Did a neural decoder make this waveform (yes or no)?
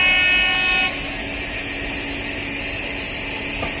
no